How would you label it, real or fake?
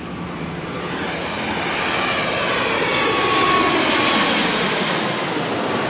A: real